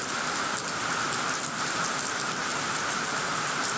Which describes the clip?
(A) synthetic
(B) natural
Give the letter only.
B